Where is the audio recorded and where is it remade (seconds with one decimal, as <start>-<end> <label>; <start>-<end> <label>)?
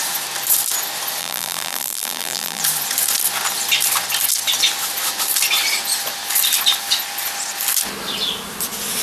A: 0.0-1.2 recorded; 1.2-2.6 remade; 2.6-9.0 recorded